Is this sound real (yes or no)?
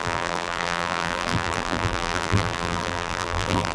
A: no